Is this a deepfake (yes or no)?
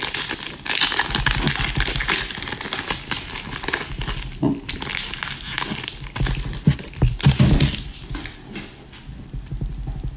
no